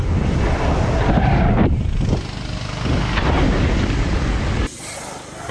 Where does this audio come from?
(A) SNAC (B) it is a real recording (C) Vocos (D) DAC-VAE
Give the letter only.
B